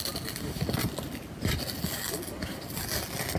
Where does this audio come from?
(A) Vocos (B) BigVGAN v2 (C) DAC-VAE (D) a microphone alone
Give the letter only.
D